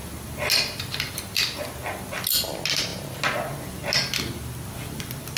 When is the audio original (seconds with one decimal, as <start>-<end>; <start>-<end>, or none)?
0.0-5.4